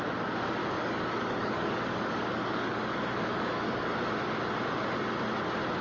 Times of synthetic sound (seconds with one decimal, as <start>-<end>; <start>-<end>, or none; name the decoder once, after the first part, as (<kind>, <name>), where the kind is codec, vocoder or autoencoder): 0.6-4.1 (codec, DAC)